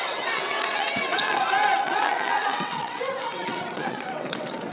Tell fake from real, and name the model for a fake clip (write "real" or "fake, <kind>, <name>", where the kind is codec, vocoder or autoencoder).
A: fake, vocoder, WaveNeXt